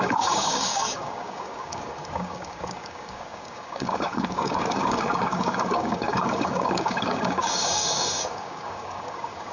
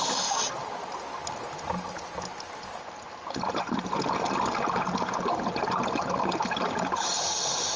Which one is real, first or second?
second